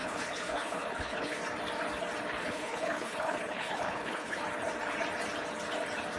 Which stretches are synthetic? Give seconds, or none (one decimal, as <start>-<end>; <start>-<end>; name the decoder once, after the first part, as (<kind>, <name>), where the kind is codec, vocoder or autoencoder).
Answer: 0.0-1.4 (codec, HILCodec); 2.4-4.4